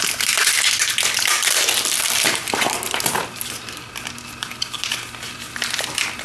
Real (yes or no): yes